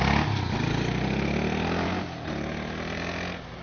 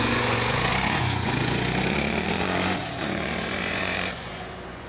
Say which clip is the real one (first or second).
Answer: first